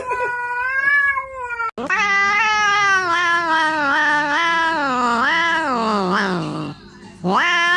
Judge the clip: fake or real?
real